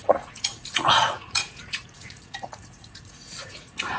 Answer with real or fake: fake